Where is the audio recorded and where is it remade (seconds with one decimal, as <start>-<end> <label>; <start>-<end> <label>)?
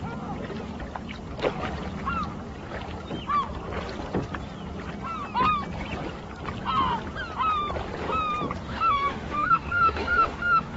0.0-8.7 recorded; 8.7-10.8 remade